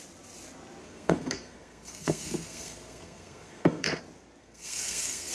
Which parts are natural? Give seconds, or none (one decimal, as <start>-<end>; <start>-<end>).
0.0-0.8; 4.0-4.4